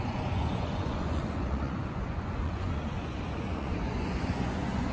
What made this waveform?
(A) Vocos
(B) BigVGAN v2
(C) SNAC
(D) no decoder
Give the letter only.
A